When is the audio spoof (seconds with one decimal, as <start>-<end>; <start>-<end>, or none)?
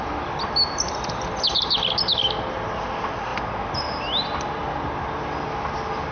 none